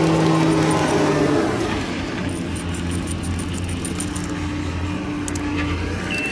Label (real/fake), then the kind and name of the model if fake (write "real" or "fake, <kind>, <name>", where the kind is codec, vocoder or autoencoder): real